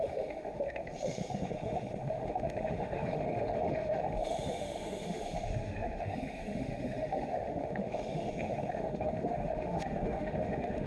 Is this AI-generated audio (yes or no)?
yes